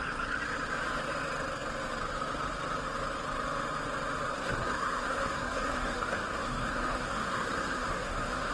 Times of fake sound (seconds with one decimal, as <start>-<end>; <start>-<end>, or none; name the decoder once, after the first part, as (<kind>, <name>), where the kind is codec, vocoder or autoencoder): 4.3-8.5 (codec, SNAC)